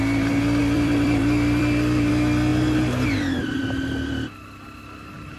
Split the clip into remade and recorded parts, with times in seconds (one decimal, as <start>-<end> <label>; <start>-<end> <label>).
0.0-0.6 recorded; 0.6-2.1 remade; 2.1-5.4 recorded